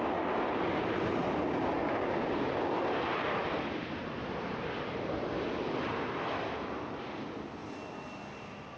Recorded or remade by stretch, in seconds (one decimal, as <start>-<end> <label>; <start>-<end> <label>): 0.0-8.8 recorded